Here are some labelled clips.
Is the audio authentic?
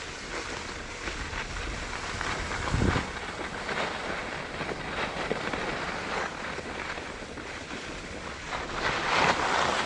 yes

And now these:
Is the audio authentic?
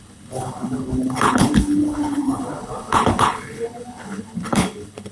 no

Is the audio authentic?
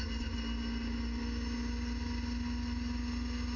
yes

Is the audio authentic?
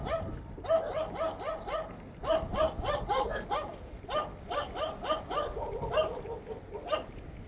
yes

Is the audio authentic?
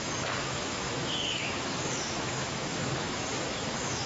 no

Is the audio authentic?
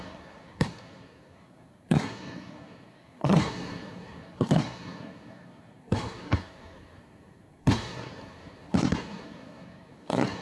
no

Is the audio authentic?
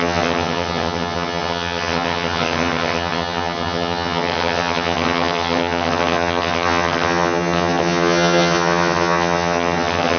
no